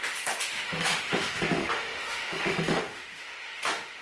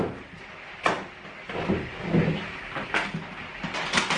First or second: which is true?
second